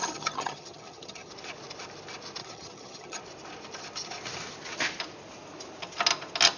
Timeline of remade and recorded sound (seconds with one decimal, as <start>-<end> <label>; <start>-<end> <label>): 0.0-1.3 remade; 1.3-2.4 recorded; 2.4-3.2 remade; 3.2-6.6 recorded